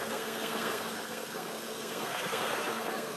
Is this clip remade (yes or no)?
yes